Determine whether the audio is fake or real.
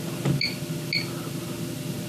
real